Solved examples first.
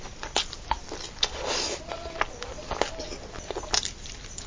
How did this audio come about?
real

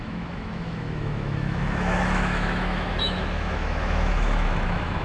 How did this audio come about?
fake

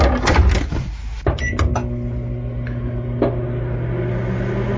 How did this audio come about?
real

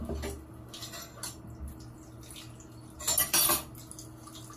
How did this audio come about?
real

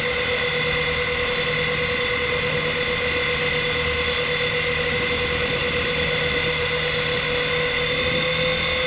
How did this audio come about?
real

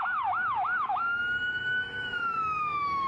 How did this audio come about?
fake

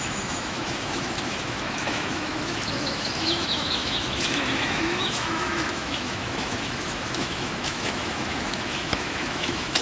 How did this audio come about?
fake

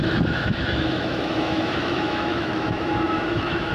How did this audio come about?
fake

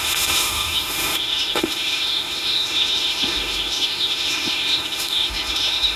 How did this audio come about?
fake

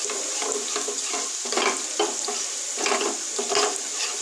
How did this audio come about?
real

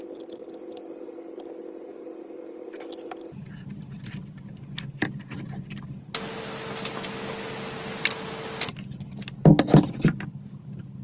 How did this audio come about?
real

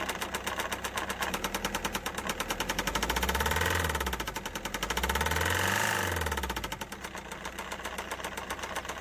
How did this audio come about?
real